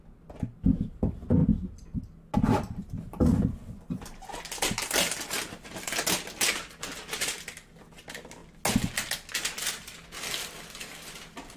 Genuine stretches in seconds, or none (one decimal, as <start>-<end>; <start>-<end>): 0.0-11.6